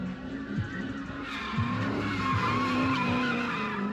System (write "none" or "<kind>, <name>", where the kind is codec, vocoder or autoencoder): none